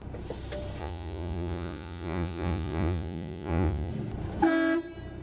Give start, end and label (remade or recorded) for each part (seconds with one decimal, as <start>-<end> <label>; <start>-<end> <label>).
0.0-0.8 recorded; 0.8-3.9 remade; 3.9-5.2 recorded